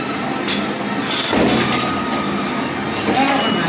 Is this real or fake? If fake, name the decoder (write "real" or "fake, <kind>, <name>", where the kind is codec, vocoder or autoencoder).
real